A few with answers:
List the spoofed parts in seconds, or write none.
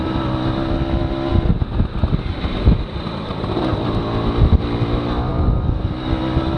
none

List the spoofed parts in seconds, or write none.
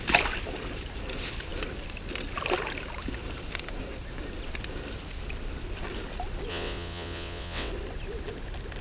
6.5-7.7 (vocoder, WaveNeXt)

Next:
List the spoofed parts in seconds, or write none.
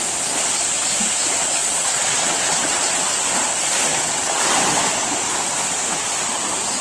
1.6-3.1 (vocoder, WaveNeXt); 3.9-4.4